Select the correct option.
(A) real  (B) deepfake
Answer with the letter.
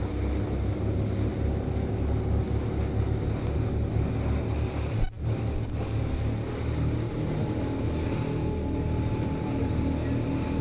A